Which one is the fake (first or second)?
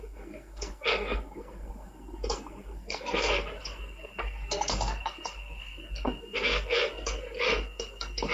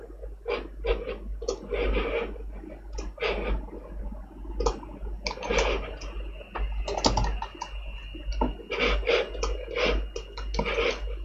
first